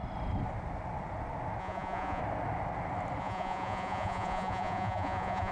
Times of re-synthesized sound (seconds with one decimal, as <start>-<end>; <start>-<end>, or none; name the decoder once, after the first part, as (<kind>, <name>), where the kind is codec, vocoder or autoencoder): 1.6-2.2 (vocoder, Vocos); 3.2-5.5